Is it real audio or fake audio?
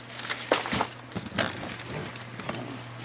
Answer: real